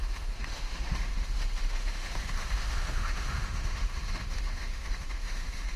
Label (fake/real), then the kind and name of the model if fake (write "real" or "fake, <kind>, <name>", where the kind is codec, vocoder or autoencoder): fake, autoencoder, DAC-VAE